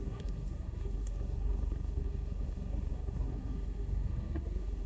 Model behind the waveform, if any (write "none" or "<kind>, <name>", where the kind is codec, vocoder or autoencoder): codec, SNAC